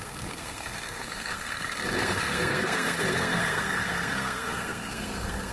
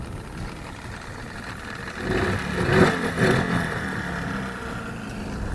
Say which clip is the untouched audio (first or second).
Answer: second